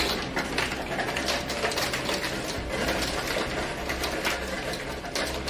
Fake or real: real